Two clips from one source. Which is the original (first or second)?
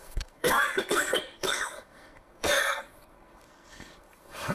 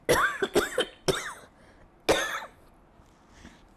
second